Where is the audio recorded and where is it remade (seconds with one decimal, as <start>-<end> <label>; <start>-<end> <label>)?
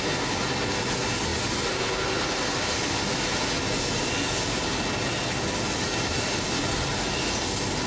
0.0-7.9 recorded